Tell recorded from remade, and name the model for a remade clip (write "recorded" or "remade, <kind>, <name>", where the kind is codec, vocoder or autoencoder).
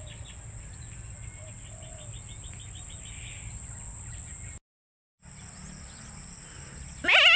recorded